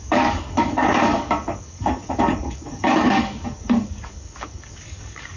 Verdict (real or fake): fake